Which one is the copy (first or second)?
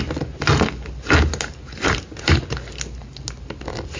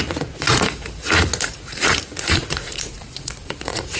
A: second